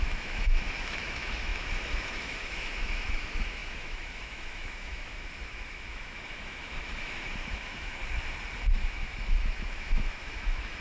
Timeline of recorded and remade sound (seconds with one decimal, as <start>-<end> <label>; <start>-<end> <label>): 0.0-8.0 remade; 8.0-8.7 recorded; 8.7-10.8 remade